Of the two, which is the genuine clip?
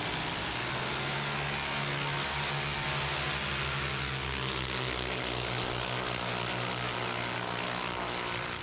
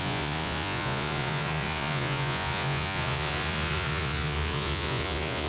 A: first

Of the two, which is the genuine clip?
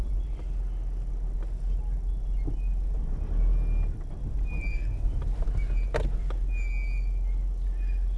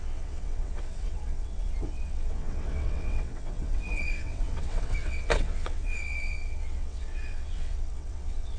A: first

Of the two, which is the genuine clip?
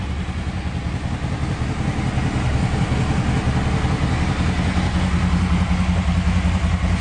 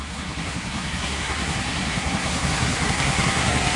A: first